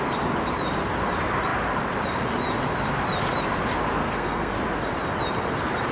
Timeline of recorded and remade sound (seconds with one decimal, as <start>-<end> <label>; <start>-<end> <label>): 0.0-4.0 recorded; 4.0-4.5 remade; 4.5-5.9 recorded